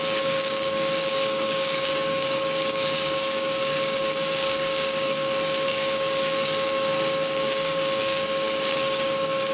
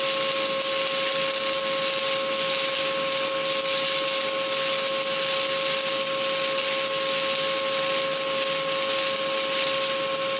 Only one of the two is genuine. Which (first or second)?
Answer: second